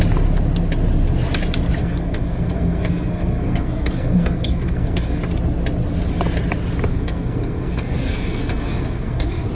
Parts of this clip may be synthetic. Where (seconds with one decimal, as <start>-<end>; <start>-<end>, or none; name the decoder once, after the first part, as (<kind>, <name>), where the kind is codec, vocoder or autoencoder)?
1.8-5.2 (codec, SNAC); 6.9-9.5